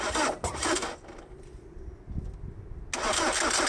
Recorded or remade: recorded